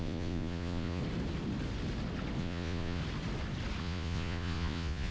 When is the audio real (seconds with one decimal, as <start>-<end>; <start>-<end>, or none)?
1.0-2.4; 3.0-3.8